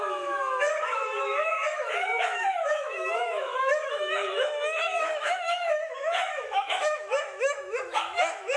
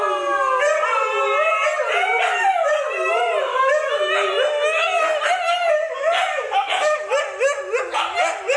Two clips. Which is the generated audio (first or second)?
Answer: first